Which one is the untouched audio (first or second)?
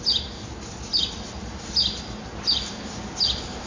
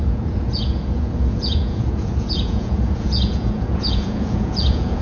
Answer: first